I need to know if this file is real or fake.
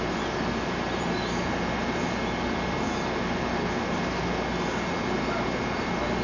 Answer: real